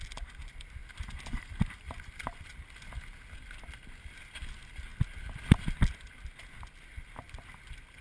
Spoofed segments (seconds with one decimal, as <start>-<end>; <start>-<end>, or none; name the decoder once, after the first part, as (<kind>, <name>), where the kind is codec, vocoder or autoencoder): none